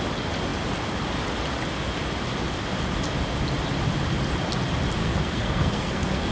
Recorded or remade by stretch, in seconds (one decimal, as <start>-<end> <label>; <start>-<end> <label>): 0.0-5.0 recorded; 5.0-6.3 remade